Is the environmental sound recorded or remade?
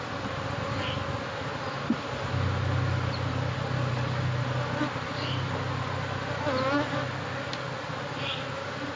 recorded